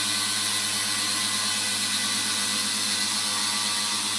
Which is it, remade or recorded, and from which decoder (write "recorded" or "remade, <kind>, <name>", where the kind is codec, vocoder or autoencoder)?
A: recorded